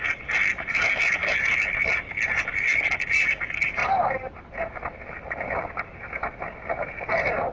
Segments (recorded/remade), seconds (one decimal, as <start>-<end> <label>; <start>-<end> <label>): 0.0-7.5 recorded